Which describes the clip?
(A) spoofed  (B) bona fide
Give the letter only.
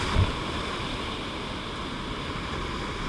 B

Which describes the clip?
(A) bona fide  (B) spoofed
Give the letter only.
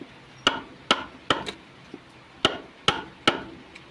A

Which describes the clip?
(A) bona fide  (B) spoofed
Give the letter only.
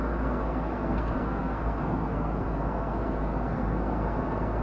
B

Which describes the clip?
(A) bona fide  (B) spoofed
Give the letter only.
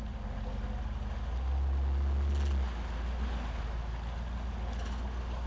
A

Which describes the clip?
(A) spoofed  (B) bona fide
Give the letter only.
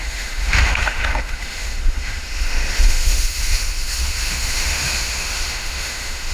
A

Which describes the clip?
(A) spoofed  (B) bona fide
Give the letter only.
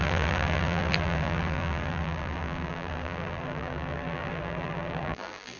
A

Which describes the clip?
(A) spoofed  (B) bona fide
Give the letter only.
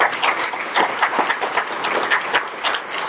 B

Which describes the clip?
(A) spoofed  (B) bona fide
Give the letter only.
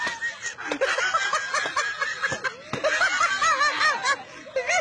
B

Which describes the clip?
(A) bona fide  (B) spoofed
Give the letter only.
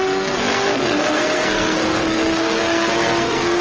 B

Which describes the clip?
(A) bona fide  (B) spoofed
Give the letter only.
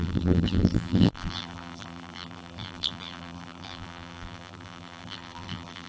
B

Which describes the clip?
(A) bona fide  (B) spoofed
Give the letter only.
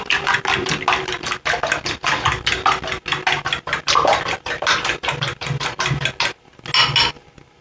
A